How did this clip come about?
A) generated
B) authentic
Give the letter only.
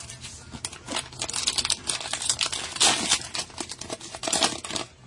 B